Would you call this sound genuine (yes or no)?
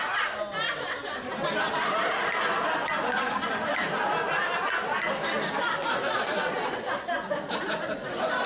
yes